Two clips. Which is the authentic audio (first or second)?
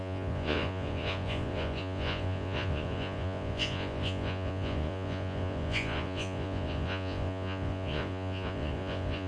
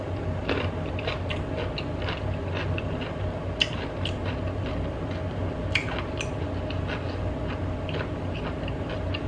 second